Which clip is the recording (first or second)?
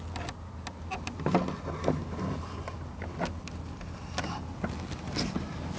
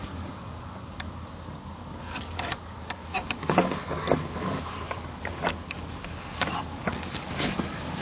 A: first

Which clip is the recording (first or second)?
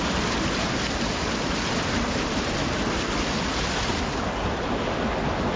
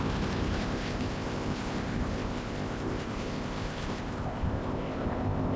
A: first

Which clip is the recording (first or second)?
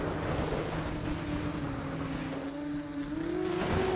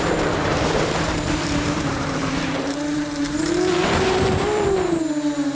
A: first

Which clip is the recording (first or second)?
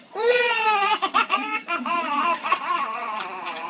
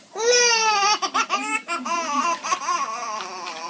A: second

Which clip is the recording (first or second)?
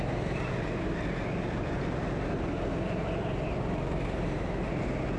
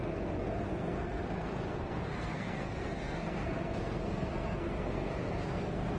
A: first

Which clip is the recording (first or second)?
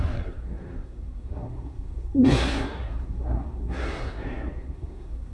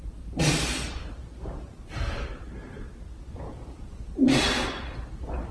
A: second